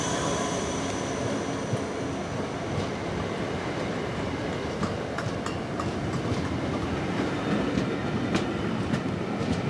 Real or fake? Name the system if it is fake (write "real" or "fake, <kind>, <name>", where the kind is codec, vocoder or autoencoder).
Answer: real